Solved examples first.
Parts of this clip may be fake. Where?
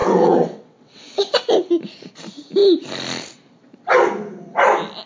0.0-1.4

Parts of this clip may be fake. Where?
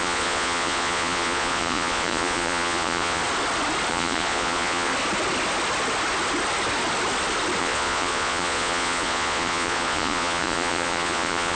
0.0-3.2; 3.9-4.9; 7.6-11.6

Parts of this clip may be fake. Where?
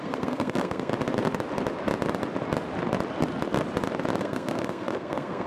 0.0-0.9; 4.2-5.5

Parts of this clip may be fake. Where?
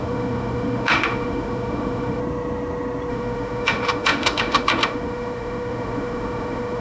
0.0-2.2; 3.1-6.8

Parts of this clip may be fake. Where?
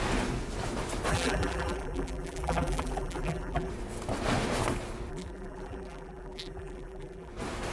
1.1-3.7; 5.1-7.3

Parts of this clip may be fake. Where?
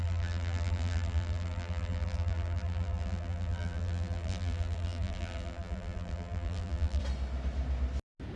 0.0-7.0